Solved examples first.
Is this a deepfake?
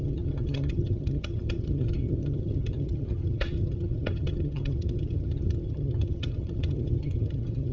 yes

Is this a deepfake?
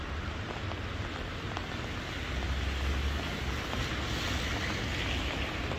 no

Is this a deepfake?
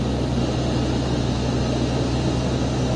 no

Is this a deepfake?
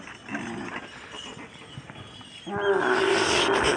no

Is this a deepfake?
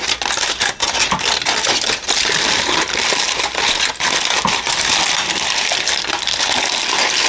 no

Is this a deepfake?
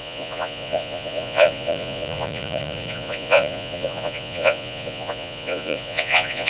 yes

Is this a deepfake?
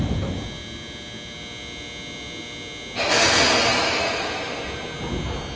no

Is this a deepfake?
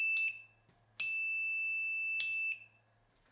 no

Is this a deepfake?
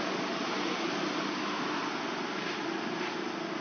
no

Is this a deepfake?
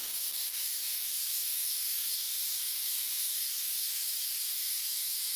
yes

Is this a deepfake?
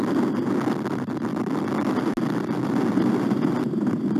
no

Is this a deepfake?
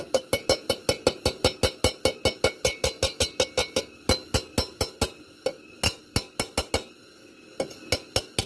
no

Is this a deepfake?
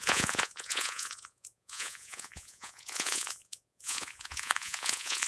yes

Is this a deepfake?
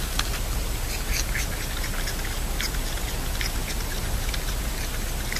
no